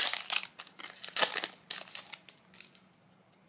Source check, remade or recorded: recorded